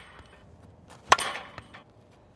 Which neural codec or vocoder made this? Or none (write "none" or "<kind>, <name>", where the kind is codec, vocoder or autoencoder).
vocoder, BigVGAN v2